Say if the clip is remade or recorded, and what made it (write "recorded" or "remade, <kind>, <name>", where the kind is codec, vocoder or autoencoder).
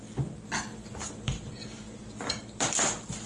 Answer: remade, vocoder, BigVGAN v2